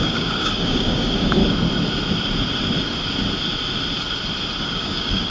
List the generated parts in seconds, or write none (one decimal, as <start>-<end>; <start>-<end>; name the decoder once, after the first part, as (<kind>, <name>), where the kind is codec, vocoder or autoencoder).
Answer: 0.0-1.4 (codec, DAC); 4.6-5.3